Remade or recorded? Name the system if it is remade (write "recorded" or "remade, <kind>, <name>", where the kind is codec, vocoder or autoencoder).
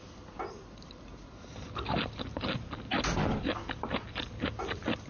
recorded